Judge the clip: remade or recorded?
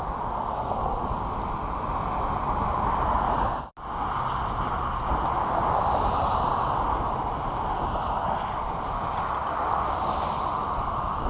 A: recorded